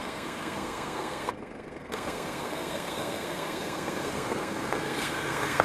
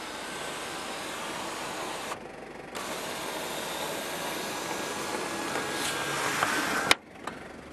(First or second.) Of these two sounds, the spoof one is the first